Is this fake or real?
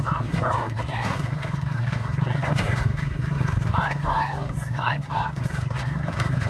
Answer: fake